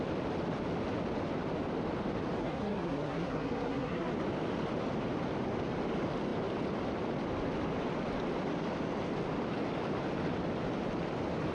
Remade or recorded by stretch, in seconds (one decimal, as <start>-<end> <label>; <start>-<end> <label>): 0.0-2.4 recorded; 2.4-4.1 remade; 4.1-11.5 recorded